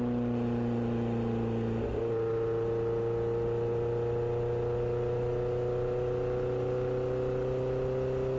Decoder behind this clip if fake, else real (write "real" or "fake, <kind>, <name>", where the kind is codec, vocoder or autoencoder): real